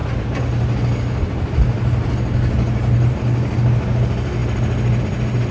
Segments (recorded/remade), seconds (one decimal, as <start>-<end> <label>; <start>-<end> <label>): 0.0-5.5 recorded